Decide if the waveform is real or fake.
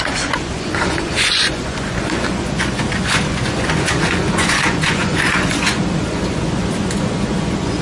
fake